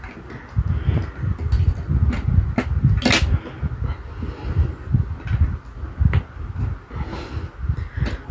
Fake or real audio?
real